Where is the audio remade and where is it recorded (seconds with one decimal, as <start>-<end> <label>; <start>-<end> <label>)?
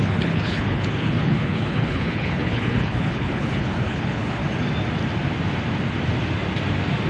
0.0-4.4 remade; 4.4-7.1 recorded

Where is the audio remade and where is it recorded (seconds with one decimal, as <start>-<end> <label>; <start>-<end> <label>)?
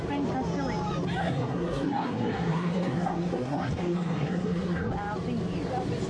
0.0-1.2 recorded; 1.2-4.9 remade; 4.9-6.1 recorded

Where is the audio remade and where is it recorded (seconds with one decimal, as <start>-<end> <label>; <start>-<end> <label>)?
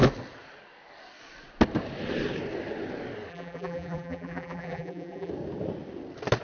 0.0-3.3 recorded; 3.3-5.3 remade; 5.3-6.4 recorded